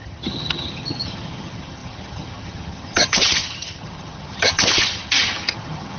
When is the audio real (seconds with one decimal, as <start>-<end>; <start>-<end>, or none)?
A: none

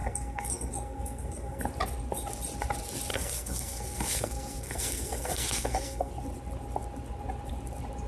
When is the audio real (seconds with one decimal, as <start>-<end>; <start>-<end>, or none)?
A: 1.6-3.1; 6.1-8.1

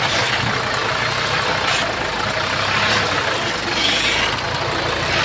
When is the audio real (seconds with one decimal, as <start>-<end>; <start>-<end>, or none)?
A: 0.0-5.2